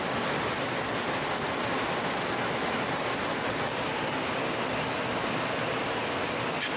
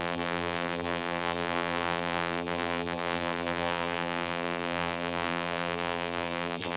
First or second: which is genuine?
first